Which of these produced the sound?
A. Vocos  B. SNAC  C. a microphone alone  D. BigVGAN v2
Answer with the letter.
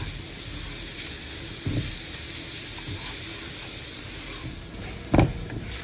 C